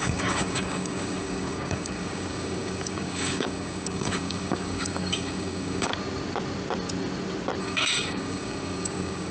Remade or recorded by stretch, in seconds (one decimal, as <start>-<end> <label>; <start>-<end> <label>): 0.0-5.9 remade; 5.9-7.6 recorded; 7.6-9.3 remade